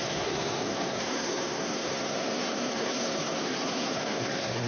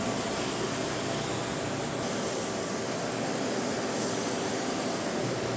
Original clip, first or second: second